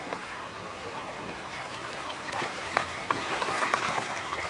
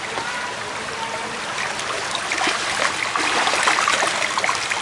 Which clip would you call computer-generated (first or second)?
first